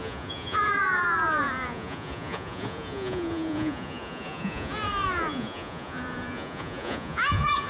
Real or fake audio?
fake